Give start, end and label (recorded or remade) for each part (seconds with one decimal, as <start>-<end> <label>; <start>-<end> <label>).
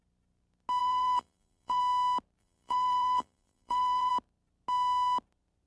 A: 0.0-0.8 recorded; 0.8-1.8 remade; 1.8-2.4 recorded; 2.4-4.1 remade; 4.1-5.7 recorded